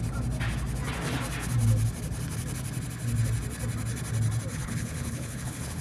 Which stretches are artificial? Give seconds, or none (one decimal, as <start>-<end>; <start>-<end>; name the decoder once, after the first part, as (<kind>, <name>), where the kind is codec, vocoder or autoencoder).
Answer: 4.5-5.8 (codec, HILCodec)